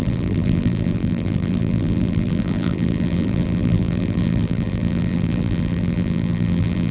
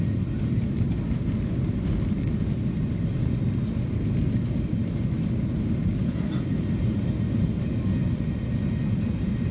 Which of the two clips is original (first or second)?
second